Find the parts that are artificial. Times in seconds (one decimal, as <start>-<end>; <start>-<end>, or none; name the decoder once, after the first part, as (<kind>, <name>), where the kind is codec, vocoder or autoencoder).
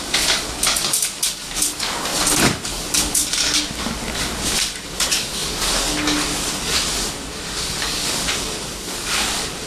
0.0-9.7 (codec, DAC)